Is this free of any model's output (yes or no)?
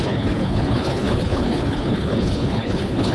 no